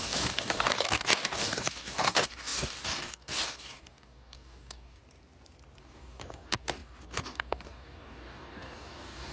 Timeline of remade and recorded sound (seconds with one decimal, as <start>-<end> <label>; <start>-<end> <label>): 0.0-5.0 remade; 5.0-5.8 recorded; 5.8-9.3 remade